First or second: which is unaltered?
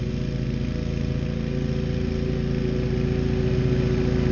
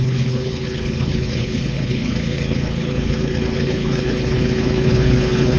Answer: first